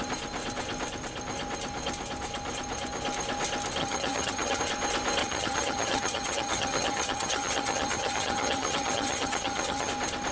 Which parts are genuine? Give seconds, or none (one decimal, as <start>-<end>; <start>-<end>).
0.0-3.8; 4.6-5.2; 9.9-10.3